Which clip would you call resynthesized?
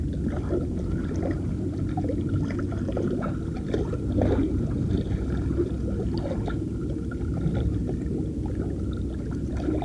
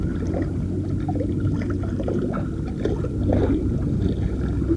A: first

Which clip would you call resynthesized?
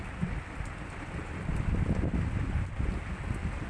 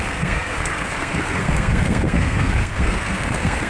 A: second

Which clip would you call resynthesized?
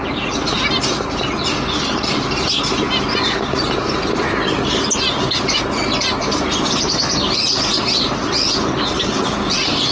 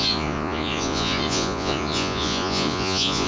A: second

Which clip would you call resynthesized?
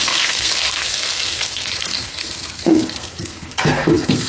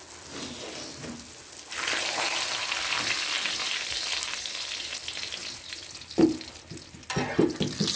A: first